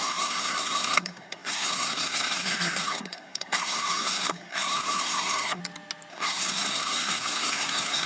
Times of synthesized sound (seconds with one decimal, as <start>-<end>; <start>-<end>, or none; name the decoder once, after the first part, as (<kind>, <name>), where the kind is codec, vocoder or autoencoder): 0.0-5.6 (codec, SNAC); 6.1-8.1